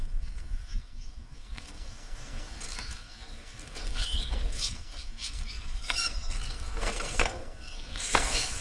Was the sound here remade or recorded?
remade